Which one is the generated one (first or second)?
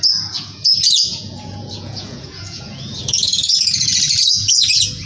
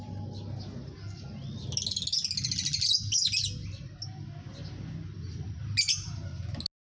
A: first